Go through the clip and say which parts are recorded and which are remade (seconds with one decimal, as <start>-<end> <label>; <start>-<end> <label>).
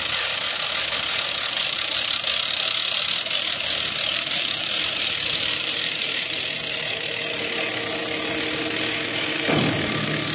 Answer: 0.0-1.6 recorded; 1.6-2.2 remade; 2.2-4.1 recorded; 4.1-7.4 remade; 7.4-10.3 recorded